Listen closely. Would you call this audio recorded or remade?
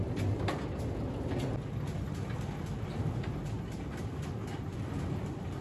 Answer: recorded